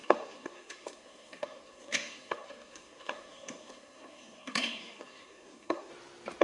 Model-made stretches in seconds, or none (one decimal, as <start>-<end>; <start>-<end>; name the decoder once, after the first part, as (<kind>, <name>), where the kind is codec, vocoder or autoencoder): 0.0-5.9 (codec, SNAC)